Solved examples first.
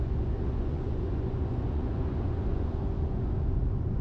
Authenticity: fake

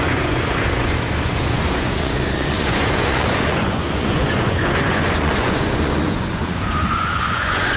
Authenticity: fake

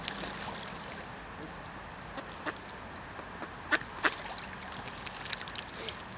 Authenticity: real